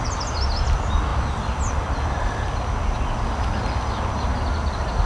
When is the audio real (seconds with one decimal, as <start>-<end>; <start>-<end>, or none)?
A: 0.0-5.1